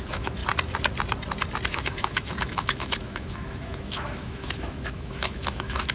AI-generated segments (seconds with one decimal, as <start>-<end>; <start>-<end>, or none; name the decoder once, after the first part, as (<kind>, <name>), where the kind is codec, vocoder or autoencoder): 0.0-0.4 (autoencoder, DAC-VAE); 1.7-5.9